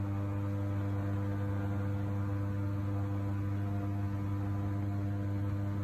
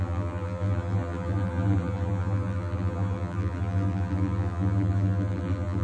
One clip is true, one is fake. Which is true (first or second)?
first